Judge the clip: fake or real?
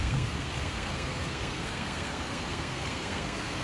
fake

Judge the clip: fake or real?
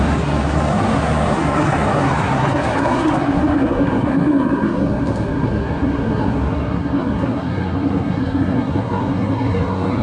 fake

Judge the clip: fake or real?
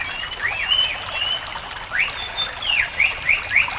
real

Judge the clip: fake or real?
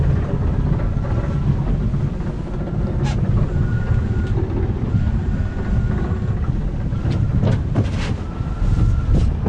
real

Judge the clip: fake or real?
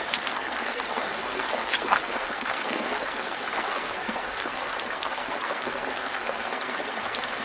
fake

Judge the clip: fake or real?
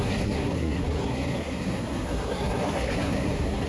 fake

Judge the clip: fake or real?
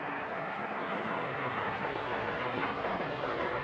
fake